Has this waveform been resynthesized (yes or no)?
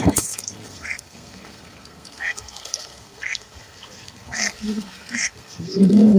yes